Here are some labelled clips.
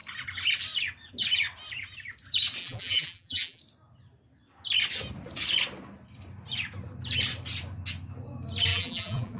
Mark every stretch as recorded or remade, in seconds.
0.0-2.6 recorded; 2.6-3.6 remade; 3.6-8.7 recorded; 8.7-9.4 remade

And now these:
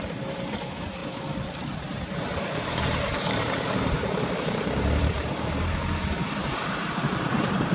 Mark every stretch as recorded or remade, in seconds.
0.0-7.7 remade

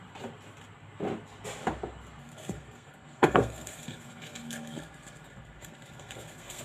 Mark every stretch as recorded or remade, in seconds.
0.0-2.2 recorded; 2.2-6.6 remade

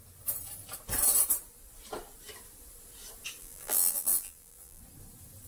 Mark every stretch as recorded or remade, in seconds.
0.0-3.4 recorded; 3.4-4.8 remade; 4.8-5.5 recorded

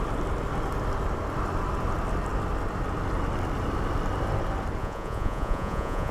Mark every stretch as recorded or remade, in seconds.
0.0-4.8 recorded; 4.8-6.1 remade